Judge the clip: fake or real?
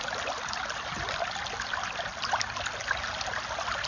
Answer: real